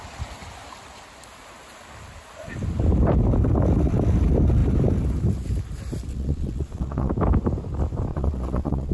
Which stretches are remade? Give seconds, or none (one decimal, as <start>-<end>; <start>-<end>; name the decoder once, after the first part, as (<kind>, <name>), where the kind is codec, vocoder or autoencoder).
6.1-7.1 (vocoder, Vocos); 8.1-8.9